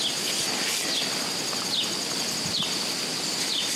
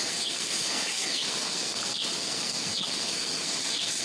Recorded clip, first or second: first